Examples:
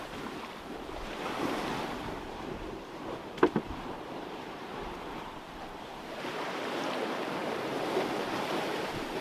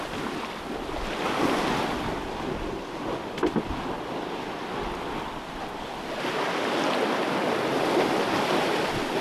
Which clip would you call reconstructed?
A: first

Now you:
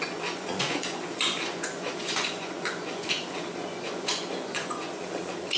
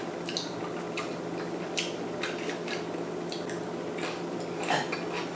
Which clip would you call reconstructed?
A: first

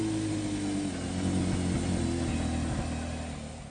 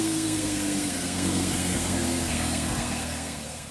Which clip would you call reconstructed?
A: second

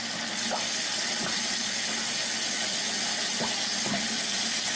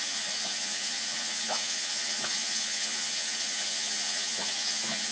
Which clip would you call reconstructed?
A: second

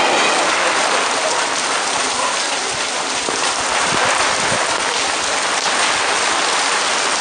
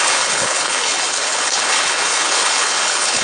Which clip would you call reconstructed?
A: second